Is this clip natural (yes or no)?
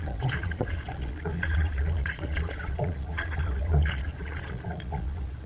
no